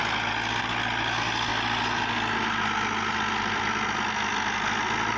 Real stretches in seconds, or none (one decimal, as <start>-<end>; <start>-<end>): 0.0-5.2